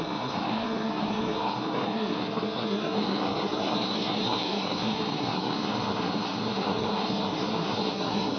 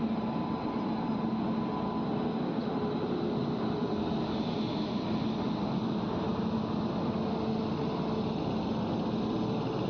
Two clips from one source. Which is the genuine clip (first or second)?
second